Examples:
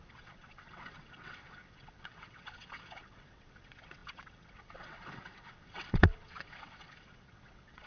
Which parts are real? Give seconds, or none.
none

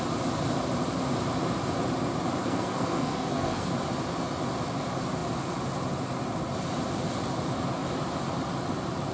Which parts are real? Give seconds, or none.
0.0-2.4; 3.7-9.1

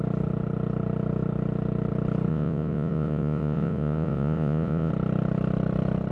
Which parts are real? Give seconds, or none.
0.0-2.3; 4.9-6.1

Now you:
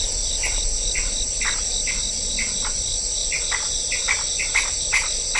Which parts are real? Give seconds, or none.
0.0-3.2; 4.8-5.4

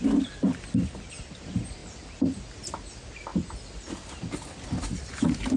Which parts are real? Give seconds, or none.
0.0-5.6

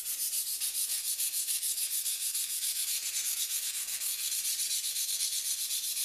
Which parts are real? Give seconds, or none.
0.0-0.8; 4.4-4.9; 5.6-6.0

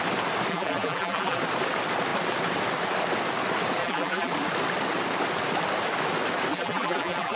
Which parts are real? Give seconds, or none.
0.0-0.5; 1.4-3.8; 4.3-6.5

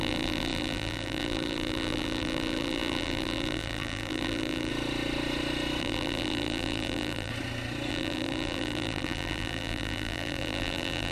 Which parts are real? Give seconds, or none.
4.7-5.8; 7.3-7.9